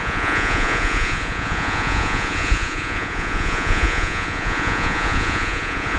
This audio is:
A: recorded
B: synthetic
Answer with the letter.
B